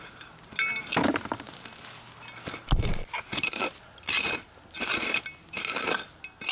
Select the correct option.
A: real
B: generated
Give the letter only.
A